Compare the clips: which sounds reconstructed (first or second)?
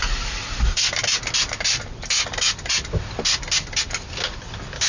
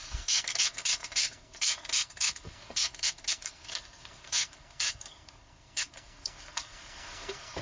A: second